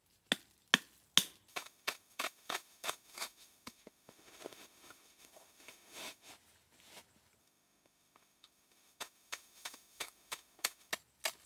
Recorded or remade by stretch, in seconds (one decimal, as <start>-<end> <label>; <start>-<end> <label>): 0.0-1.5 recorded; 1.5-6.3 remade; 6.3-7.4 recorded; 7.4-10.9 remade; 10.9-11.5 recorded